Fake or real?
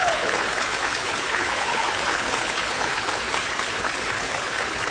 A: fake